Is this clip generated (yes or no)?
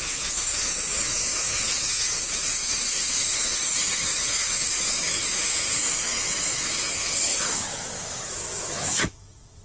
yes